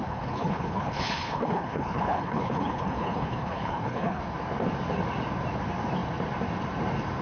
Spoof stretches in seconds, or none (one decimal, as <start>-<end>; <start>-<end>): 0.0-4.2